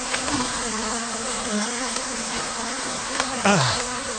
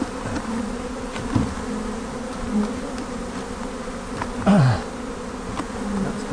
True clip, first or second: second